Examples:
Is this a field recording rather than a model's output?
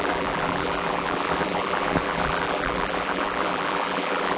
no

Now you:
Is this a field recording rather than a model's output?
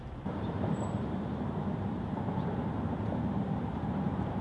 no